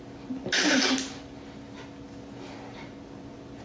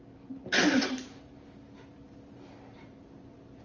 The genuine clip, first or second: first